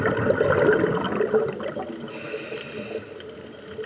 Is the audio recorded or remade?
recorded